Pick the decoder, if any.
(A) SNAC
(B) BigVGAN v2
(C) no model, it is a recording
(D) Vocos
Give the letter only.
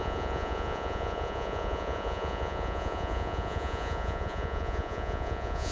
D